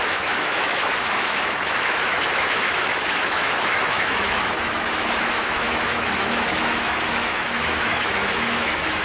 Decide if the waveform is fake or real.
fake